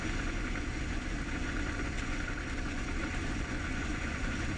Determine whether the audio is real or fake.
fake